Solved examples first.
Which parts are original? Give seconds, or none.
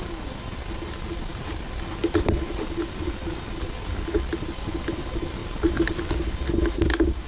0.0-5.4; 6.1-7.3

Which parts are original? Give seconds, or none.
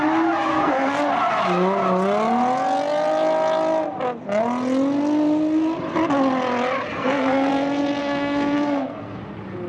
0.0-0.5; 1.0-6.9; 7.5-8.0; 9.2-9.7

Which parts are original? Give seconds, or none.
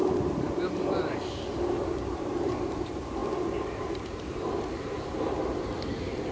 none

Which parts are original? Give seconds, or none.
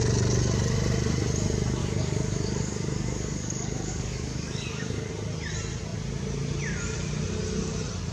0.0-1.8; 5.1-8.1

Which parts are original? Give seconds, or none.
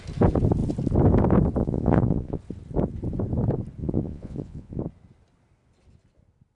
0.0-1.6; 2.4-3.8; 4.8-6.5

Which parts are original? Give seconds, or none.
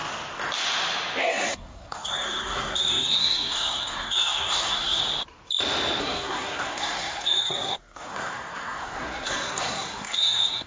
0.0-1.2; 5.0-6.0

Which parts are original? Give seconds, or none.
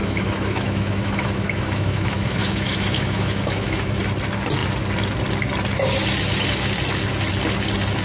4.0-8.0